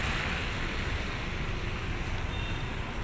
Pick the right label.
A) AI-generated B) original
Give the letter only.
B